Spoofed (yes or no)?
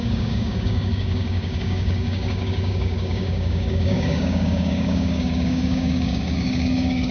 yes